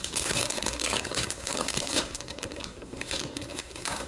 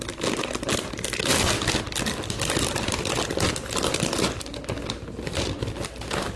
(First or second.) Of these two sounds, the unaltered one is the second